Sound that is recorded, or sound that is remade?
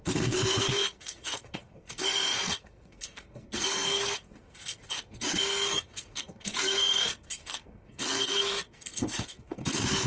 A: remade